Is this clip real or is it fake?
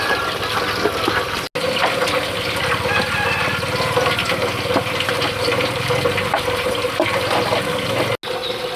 real